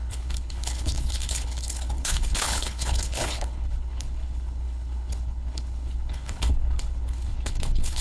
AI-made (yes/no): yes